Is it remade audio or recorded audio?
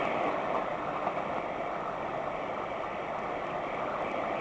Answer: recorded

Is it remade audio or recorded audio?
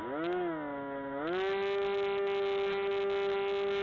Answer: recorded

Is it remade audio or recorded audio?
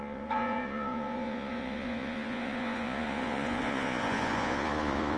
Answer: remade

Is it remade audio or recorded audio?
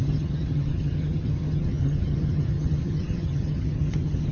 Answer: remade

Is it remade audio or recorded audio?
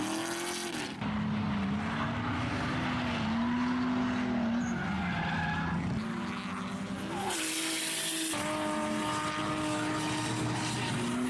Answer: recorded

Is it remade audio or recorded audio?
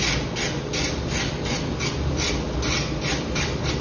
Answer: recorded